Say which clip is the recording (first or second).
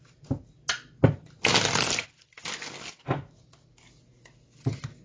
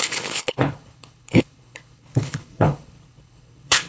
first